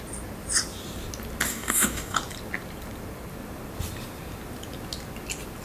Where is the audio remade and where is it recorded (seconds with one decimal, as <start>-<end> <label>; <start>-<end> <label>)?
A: 0.0-1.5 recorded; 1.5-2.2 remade; 2.2-5.6 recorded